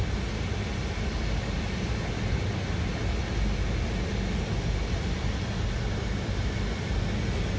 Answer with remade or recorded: recorded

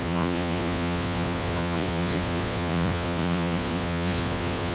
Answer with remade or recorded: remade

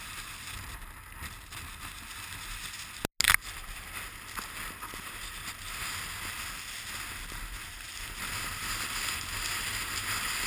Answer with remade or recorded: recorded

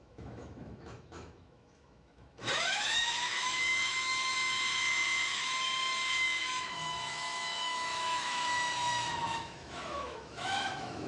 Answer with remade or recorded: remade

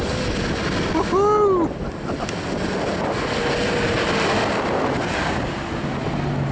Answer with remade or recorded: recorded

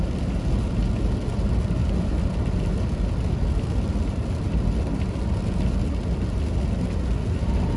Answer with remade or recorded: recorded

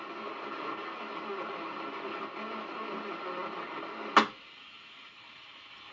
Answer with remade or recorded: recorded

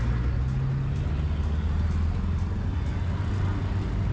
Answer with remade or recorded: recorded